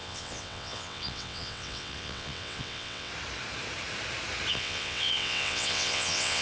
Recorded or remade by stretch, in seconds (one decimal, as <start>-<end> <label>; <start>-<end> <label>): 0.0-3.1 remade; 3.1-4.5 recorded; 4.5-6.4 remade